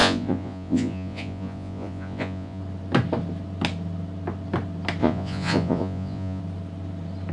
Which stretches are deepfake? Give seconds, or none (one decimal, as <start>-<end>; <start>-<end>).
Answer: 0.0-2.6; 5.0-6.4